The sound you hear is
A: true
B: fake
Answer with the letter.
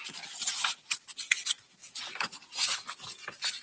A